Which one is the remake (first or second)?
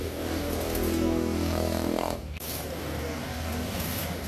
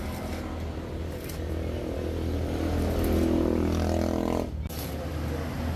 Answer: first